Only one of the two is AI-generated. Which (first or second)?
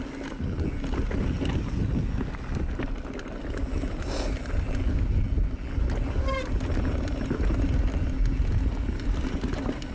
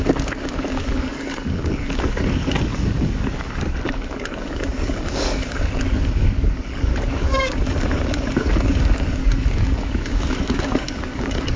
second